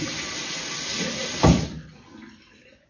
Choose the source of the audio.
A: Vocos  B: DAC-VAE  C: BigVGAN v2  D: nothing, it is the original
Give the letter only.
C